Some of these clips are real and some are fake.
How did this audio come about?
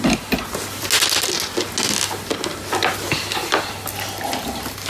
real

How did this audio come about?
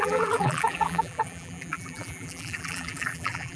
fake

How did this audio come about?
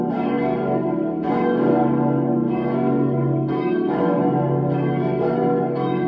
fake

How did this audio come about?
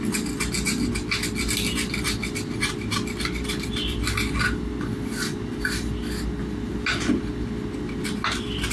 real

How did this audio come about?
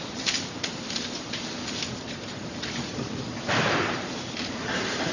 fake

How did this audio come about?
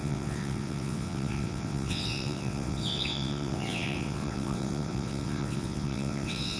fake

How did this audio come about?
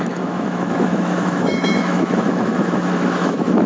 fake